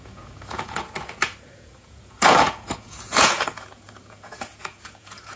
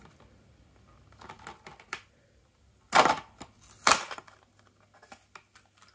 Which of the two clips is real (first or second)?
second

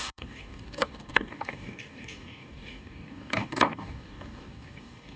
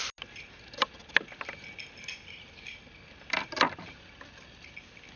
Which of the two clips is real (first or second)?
second